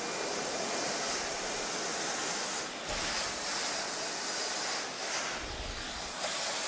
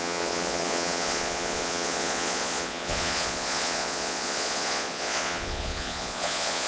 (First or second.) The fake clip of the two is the second